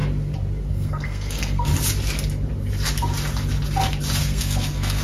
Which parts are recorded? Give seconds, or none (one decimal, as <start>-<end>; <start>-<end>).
0.0-0.7; 1.7-4.2